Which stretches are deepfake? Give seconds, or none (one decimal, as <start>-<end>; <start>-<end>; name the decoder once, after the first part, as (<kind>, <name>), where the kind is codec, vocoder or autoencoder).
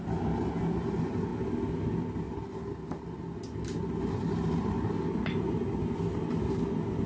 none